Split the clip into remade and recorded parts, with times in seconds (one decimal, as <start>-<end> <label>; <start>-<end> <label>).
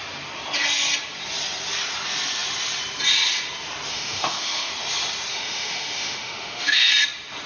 0.0-3.9 recorded; 3.9-4.7 remade; 4.7-5.3 recorded; 5.3-6.9 remade; 6.9-7.5 recorded